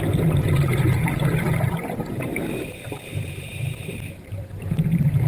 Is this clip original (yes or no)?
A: no